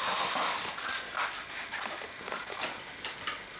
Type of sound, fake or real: fake